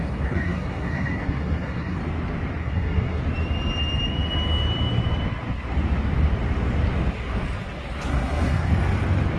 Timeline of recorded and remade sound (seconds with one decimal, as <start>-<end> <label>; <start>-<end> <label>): 0.0-2.0 remade; 2.0-2.6 recorded; 2.6-3.2 remade; 3.2-8.1 recorded; 8.1-8.7 remade; 8.7-9.4 recorded